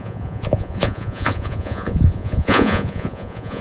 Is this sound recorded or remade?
remade